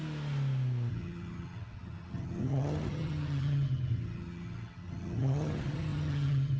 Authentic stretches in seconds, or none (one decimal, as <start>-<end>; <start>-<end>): 0.0-0.9

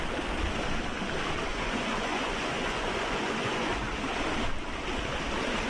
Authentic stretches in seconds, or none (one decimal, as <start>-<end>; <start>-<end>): 0.0-1.5; 3.9-5.7

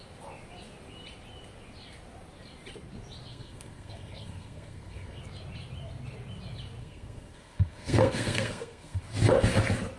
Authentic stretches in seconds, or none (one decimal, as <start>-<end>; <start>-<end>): 0.0-3.3; 5.2-6.8; 9.0-10.0